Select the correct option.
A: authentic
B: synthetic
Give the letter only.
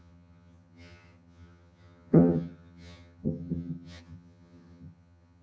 B